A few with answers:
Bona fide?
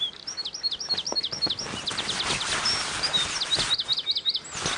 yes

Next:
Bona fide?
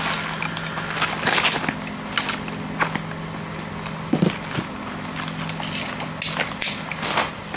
yes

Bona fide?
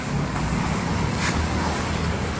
no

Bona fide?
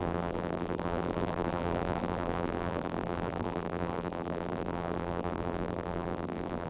no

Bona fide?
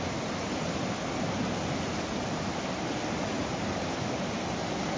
yes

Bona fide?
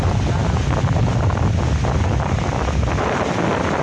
yes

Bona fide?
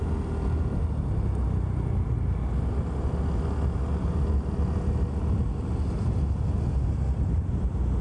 yes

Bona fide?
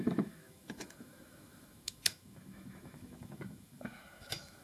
no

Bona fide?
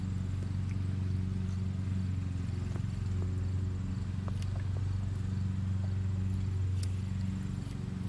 yes